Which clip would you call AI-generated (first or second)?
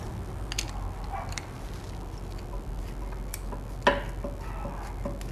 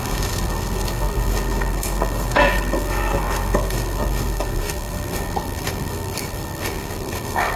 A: second